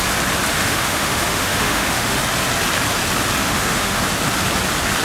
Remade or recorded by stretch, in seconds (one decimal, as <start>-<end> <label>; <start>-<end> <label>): 0.0-0.5 recorded; 0.5-2.2 remade; 2.2-3.4 recorded; 3.4-4.0 remade; 4.0-5.0 recorded